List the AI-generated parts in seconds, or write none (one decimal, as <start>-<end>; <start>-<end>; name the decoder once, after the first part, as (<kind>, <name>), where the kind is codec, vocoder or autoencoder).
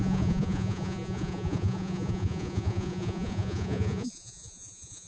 0.0-5.1 (vocoder, Vocos)